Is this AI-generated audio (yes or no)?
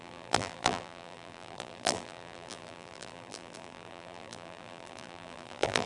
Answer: yes